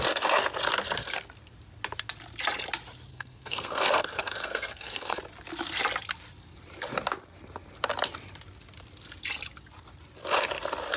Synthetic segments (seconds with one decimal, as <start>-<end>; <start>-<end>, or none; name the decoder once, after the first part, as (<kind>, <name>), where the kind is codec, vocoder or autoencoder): 3.1-5.2 (codec, SNAC)